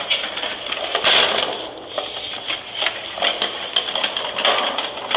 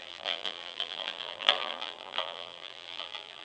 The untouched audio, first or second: first